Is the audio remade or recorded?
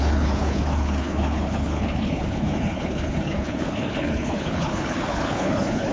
remade